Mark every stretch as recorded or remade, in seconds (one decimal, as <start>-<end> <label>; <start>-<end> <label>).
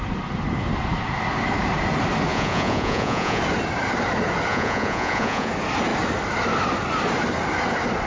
0.0-2.3 recorded; 2.3-3.4 remade; 3.4-4.5 recorded; 4.5-5.5 remade; 5.5-8.1 recorded